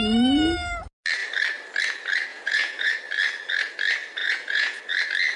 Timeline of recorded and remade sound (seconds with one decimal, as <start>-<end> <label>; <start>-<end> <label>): 0.0-2.3 recorded; 2.3-2.9 remade; 2.9-4.2 recorded; 4.2-4.8 remade; 4.8-5.4 recorded